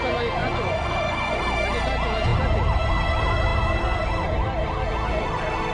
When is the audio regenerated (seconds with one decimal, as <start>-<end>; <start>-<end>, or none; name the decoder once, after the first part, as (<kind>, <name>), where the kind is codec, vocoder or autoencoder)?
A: 0.4-1.4 (vocoder, Vocos)